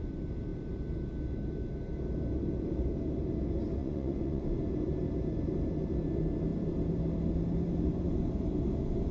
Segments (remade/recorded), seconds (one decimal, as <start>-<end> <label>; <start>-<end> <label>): 0.0-3.8 recorded; 3.8-4.6 remade; 4.6-9.1 recorded